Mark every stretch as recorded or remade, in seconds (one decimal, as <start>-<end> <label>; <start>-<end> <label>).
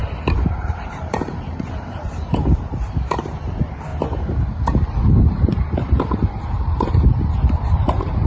0.0-3.9 remade; 3.9-5.3 recorded; 5.3-8.3 remade